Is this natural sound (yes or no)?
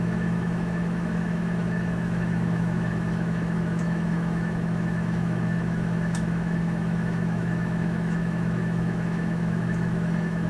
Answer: no